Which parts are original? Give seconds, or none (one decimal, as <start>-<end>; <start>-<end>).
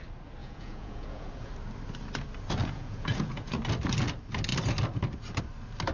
0.0-0.4; 1.5-2.6; 3.6-5.9